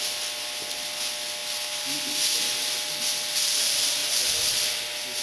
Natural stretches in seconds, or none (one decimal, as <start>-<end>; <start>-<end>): 0.0-5.2